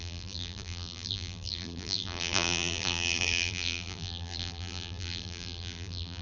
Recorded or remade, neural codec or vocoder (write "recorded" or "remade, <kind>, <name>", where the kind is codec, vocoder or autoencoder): remade, vocoder, BigVGAN v2